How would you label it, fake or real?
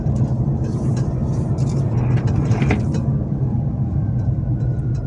fake